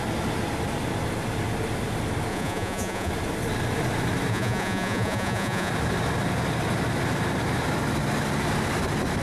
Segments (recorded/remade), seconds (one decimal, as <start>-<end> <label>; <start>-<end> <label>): 0.0-2.3 recorded; 2.3-3.1 remade; 3.1-4.3 recorded; 4.3-5.7 remade; 5.7-9.2 recorded